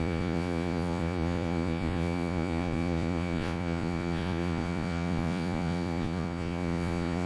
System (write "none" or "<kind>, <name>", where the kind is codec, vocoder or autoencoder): vocoder, Vocos